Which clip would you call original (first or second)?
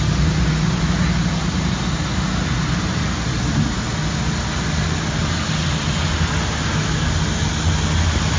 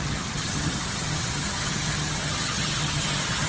first